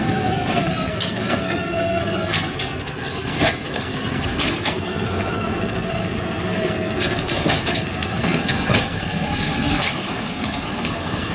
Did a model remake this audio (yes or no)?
yes